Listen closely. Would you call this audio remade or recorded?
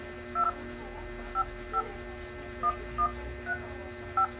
recorded